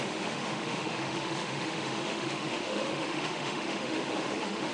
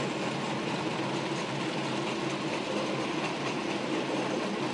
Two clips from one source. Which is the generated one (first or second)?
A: first